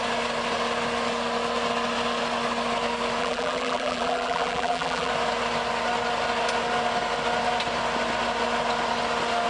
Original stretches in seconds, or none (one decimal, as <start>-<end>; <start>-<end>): 0.0-3.2; 5.1-9.5